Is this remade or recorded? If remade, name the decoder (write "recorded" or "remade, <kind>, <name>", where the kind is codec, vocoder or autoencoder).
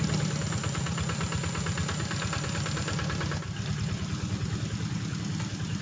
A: recorded